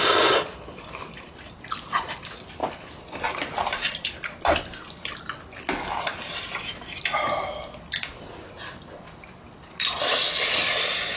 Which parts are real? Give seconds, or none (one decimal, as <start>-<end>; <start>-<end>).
0.0-11.2